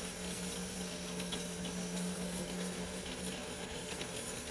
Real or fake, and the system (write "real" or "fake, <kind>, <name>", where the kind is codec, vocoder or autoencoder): fake, codec, SNAC